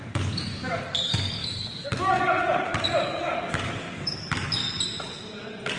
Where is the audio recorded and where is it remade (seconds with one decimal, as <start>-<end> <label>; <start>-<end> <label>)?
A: 0.0-4.6 remade; 4.6-5.8 recorded